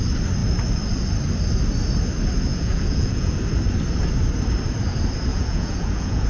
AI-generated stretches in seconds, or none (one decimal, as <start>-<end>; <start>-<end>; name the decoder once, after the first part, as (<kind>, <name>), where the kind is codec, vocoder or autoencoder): 2.5-3.4 (vocoder, Vocos); 5.3-6.3

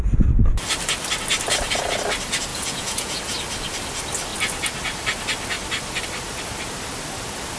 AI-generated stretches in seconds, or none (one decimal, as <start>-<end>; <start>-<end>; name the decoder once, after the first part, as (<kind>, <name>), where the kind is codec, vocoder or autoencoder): 2.5-3.2 (vocoder, Vocos)